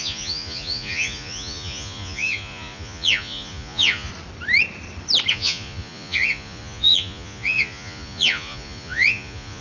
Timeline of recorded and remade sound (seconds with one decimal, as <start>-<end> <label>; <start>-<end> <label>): 0.0-4.1 remade; 4.1-5.3 recorded; 5.3-9.6 remade